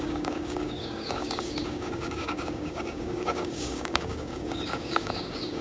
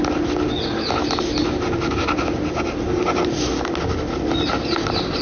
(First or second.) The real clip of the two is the second